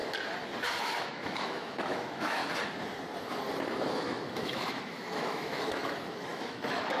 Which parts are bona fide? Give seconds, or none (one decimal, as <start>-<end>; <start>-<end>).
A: 0.0-0.8; 2.4-3.9